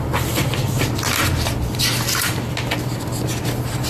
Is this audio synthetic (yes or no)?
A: no